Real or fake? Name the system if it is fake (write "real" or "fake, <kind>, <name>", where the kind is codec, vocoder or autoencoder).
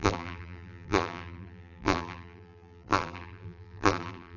fake, vocoder, BigVGAN v2